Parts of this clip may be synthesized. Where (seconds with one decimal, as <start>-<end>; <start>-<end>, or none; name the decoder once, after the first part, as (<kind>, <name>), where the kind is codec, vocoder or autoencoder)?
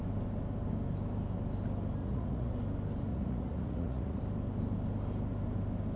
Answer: 2.0-2.5 (vocoder, Vocos); 3.1-4.2